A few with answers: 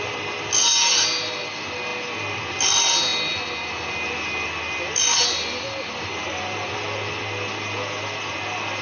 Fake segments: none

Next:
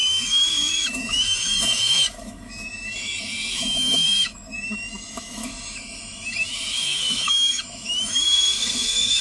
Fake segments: 0.0-9.2

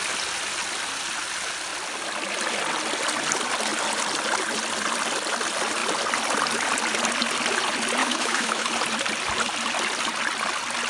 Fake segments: 8.0-8.7

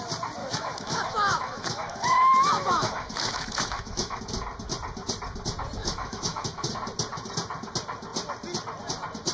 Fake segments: 0.4-4.2; 5.8-6.7

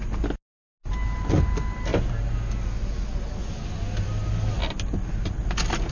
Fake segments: none

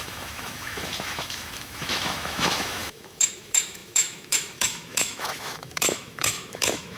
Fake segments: 0.0-7.0